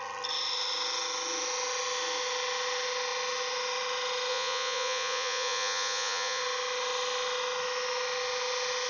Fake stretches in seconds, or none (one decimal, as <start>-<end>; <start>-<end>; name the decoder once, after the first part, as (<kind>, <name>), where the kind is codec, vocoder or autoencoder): 4.3-6.4 (vocoder, Vocos)

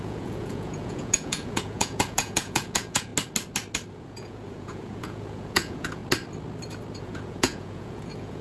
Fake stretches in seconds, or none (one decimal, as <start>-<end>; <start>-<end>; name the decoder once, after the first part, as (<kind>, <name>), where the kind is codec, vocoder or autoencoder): 0.0-3.1 (vocoder, Vocos); 3.9-6.0; 7.0-8.4

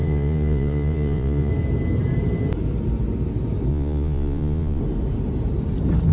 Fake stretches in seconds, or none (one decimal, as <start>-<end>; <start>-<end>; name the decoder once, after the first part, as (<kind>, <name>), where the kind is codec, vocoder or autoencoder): 0.0-1.5 (vocoder, Vocos); 3.7-4.8

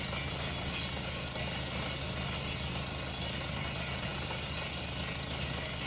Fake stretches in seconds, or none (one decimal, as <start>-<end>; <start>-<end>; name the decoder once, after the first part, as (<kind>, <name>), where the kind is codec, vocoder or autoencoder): none

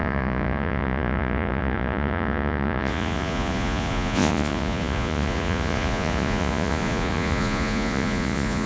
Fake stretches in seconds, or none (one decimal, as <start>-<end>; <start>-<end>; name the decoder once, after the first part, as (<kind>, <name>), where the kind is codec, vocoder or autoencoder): 0.0-8.7 (vocoder, Vocos)

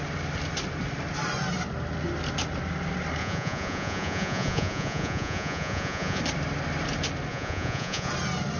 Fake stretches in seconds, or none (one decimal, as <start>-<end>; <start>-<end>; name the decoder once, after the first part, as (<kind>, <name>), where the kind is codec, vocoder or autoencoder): 3.2-6.2 (vocoder, Vocos); 7.3-8.1